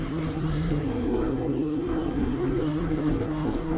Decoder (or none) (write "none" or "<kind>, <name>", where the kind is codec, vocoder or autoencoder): codec, SNAC